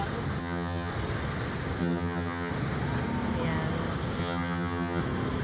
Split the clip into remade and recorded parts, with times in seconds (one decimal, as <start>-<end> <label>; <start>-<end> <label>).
0.0-0.4 recorded; 0.4-0.9 remade; 0.9-1.8 recorded; 1.8-2.5 remade; 2.5-4.2 recorded; 4.2-5.0 remade; 5.0-5.4 recorded